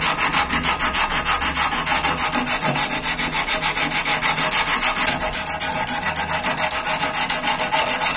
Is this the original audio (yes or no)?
yes